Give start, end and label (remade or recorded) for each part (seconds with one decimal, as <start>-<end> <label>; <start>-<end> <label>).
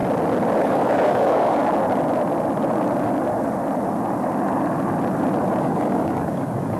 0.0-0.6 recorded; 0.6-1.6 remade; 1.6-5.6 recorded; 5.6-6.8 remade